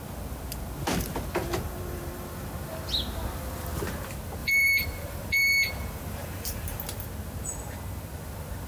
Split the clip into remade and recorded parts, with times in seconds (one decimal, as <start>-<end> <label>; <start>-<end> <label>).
0.0-1.4 recorded; 1.4-2.4 remade; 2.4-4.4 recorded; 4.4-6.8 remade; 6.8-8.7 recorded